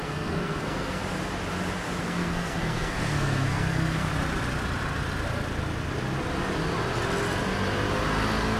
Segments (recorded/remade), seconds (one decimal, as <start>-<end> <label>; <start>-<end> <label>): 0.0-1.0 remade; 1.0-2.0 recorded; 2.0-4.1 remade; 4.1-8.6 recorded